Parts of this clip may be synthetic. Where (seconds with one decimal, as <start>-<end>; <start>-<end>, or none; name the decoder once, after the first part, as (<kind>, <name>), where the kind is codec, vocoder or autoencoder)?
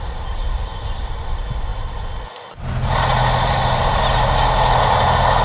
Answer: none